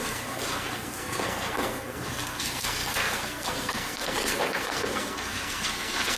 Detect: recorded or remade remade